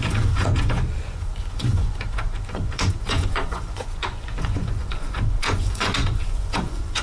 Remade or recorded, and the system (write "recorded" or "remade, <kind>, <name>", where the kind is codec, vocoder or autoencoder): remade, vocoder, Vocos